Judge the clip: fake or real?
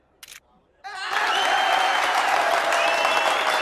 real